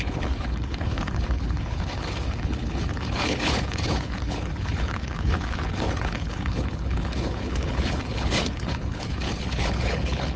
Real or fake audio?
fake